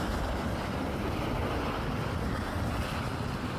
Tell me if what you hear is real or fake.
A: real